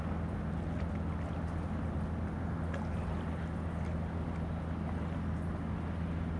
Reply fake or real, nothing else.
real